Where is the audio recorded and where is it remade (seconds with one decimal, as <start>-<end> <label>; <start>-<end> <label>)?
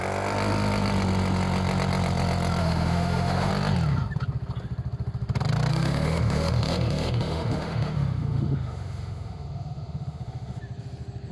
0.0-2.6 recorded; 2.6-3.5 remade; 3.5-5.7 recorded; 5.7-10.6 remade; 10.6-11.3 recorded